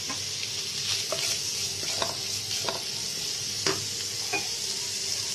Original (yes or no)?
yes